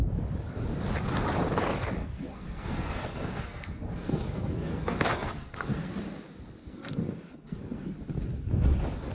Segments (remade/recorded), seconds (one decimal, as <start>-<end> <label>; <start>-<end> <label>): 0.0-2.0 recorded; 2.0-6.0 remade; 6.0-6.6 recorded; 6.6-7.9 remade; 7.9-9.1 recorded